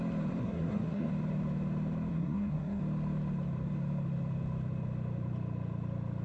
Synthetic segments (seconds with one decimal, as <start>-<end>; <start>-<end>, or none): 0.4-1.1; 2.1-2.8